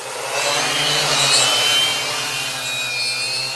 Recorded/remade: recorded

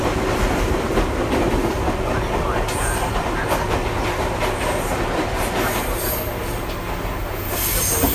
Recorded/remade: recorded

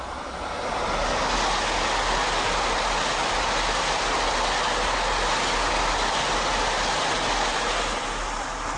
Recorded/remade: recorded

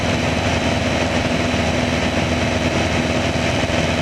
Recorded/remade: recorded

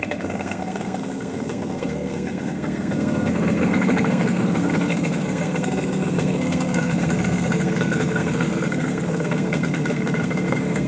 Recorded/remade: remade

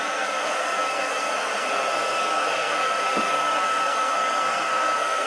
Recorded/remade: remade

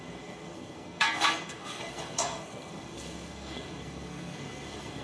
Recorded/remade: remade